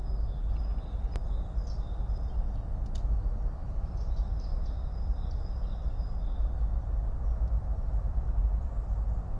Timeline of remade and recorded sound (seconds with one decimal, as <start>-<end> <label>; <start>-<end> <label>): 0.0-4.5 recorded; 4.5-5.4 remade; 5.4-6.7 recorded; 6.7-8.4 remade; 8.4-9.4 recorded